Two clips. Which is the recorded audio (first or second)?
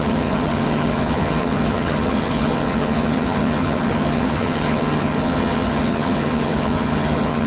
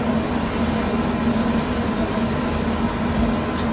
second